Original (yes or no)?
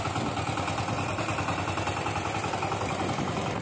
yes